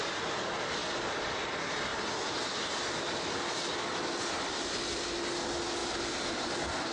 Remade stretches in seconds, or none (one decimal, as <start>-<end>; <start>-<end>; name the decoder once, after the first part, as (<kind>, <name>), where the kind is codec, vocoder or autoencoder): 0.8-1.5 (vocoder, BigVGAN v2); 1.9-4.2